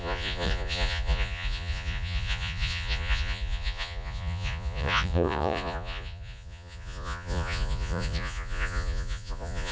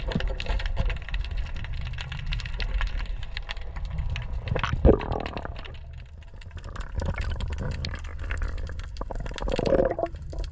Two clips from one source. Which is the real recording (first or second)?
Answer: second